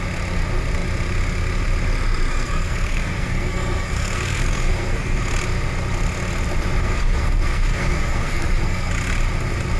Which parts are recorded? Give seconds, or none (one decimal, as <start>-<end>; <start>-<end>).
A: 0.0-2.3; 5.2-6.8; 8.9-9.8